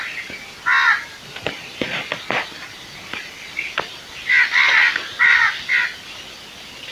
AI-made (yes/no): no